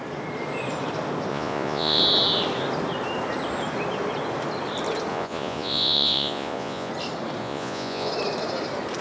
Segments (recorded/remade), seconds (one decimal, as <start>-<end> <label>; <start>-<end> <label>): 0.0-1.3 recorded; 1.3-2.0 remade; 2.0-5.1 recorded; 5.1-6.9 remade; 6.9-7.4 recorded; 7.4-8.1 remade; 8.1-9.0 recorded